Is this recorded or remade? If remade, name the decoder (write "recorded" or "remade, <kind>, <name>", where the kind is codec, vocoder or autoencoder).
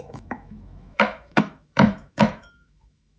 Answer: remade, autoencoder, DAC-VAE